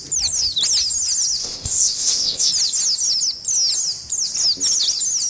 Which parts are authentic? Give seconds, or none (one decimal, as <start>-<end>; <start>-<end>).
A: 0.0-1.4; 2.5-5.3